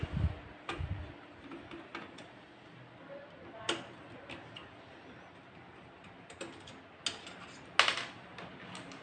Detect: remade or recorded recorded